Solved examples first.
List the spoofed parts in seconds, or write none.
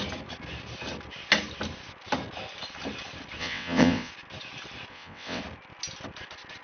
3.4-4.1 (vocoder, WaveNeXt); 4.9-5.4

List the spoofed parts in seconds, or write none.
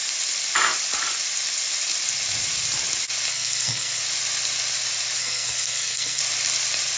3.3-4.0 (codec, SNAC); 5.2-6.2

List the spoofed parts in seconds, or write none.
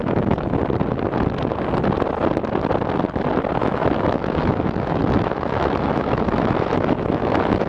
0.0-0.6 (autoencoder, DAC-VAE); 3.6-7.7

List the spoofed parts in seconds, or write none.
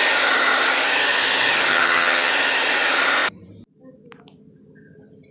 1.7-2.3 (vocoder, HiFi-GAN)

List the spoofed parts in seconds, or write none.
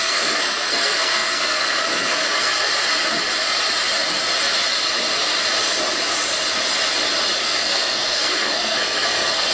0.0-2.7 (codec, SNAC); 7.4-9.5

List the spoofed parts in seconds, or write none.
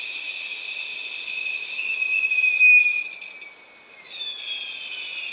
none